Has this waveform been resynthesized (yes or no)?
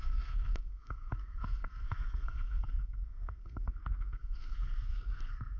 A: yes